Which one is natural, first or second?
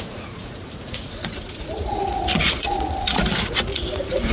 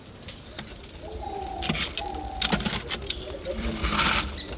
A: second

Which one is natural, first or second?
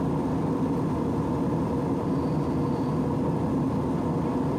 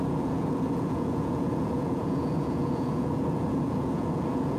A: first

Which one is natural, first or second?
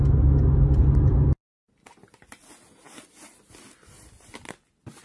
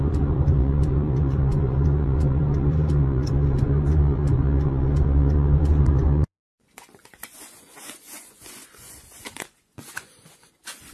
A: first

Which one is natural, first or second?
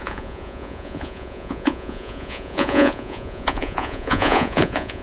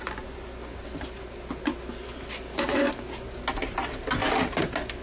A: second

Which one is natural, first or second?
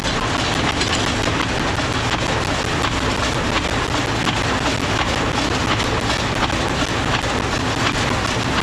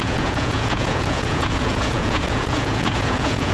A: first